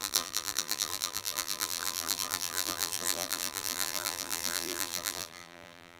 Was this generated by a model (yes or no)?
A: yes